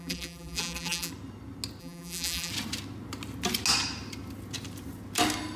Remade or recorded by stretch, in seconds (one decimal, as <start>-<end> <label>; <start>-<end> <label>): 0.0-1.1 remade; 1.1-1.8 recorded; 1.8-2.5 remade; 2.5-5.6 recorded